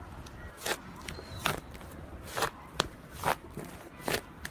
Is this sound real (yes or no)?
yes